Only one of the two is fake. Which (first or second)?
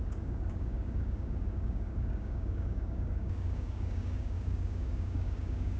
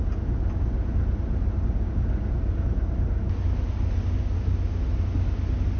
first